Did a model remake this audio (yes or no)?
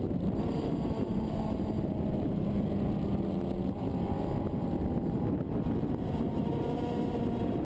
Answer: no